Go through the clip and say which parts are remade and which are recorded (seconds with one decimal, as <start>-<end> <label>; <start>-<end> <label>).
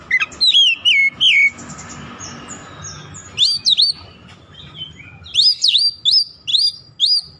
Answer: 0.0-7.4 recorded